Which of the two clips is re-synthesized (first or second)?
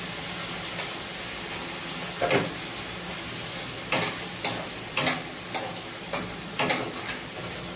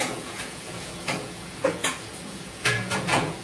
second